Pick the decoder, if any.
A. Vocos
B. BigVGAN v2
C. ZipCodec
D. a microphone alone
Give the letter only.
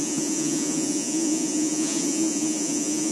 A